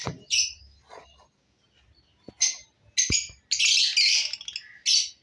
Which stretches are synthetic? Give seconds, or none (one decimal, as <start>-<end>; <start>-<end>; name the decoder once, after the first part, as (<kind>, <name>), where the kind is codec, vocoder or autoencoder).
0.0-0.6 (vocoder, Vocos)